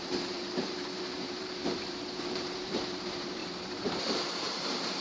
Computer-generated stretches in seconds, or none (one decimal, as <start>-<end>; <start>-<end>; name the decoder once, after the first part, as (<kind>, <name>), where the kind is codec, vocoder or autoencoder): 0.0-3.4 (vocoder, BigVGAN v2); 3.9-5.0